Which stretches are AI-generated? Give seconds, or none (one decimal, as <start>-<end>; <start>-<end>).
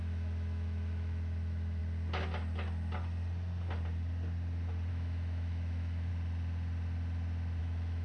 0.0-1.8; 4.9-6.1; 7.6-8.0